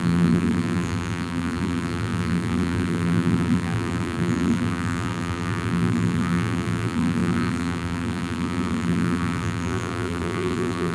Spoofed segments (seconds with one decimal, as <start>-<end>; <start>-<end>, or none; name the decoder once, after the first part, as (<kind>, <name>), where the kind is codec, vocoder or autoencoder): 0.0-10.9 (vocoder, BigVGAN v2)